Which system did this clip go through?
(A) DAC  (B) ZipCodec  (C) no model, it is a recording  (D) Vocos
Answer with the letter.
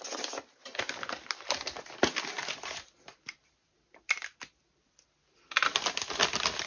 C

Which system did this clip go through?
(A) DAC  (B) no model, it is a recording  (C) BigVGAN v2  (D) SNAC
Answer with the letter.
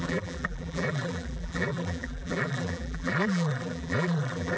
C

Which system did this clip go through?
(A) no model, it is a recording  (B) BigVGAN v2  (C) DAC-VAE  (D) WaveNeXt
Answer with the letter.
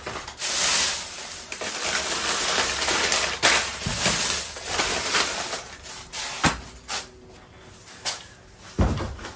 A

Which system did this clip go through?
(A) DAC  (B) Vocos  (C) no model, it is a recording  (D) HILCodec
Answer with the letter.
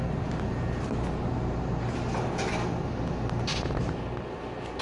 C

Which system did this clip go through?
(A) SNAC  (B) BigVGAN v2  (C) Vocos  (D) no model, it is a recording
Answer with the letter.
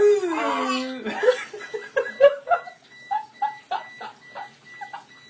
D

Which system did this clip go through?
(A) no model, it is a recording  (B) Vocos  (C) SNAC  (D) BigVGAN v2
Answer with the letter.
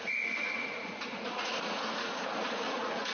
B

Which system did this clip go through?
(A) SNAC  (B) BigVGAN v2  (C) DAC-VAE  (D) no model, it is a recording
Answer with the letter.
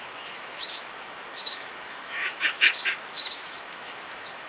C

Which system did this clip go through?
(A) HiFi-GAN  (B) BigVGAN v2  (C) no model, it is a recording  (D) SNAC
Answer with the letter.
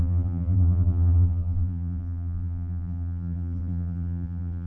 B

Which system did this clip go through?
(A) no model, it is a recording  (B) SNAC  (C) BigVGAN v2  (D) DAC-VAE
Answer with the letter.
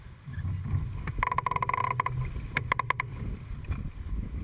A